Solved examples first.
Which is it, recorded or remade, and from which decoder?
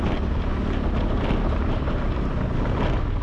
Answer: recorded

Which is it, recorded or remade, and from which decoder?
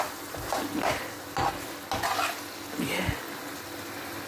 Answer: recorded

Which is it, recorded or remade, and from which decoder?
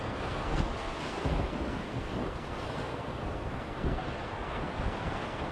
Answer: remade, codec, SNAC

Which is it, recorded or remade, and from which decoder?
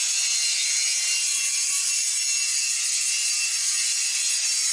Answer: recorded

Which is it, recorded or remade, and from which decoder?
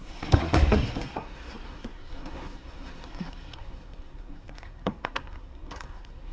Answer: remade, codec, SNAC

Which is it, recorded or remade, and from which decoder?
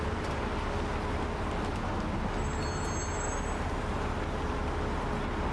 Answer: recorded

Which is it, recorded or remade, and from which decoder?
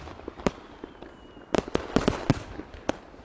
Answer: recorded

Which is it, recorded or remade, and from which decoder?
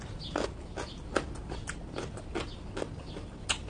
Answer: recorded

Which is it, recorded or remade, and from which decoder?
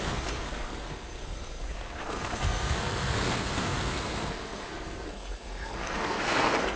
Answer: remade, codec, SNAC